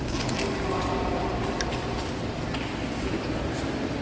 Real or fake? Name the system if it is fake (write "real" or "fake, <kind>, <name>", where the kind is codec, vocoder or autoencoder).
real